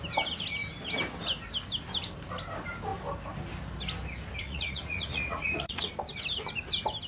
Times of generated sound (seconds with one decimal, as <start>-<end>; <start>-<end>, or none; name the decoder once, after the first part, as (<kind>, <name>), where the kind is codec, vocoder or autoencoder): 4.4-5.9 (vocoder, Vocos)